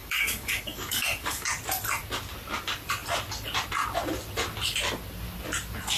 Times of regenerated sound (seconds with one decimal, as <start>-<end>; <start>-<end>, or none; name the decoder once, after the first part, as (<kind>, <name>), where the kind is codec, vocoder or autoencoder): 0.0-1.5 (codec, DAC)